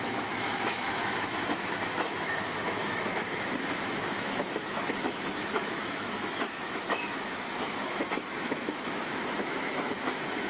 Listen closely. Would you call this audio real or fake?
fake